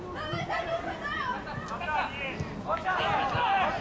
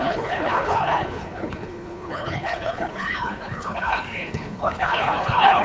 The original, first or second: first